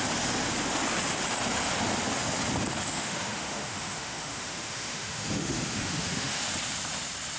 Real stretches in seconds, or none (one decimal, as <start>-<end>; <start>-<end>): 0.0-2.9; 6.4-7.4